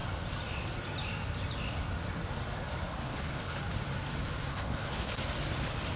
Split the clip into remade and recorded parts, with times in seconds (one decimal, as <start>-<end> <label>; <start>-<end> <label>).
0.0-3.0 recorded; 3.0-3.6 remade; 3.6-4.5 recorded; 4.5-5.1 remade; 5.1-6.0 recorded